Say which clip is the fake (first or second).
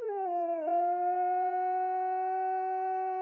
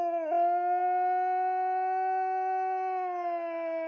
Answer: first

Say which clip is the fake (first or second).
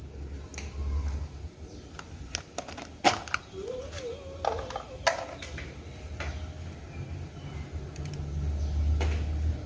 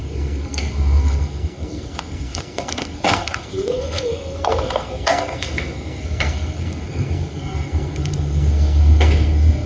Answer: second